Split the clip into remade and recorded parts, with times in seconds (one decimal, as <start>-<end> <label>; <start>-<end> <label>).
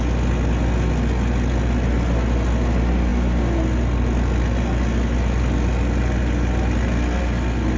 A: 0.0-7.8 recorded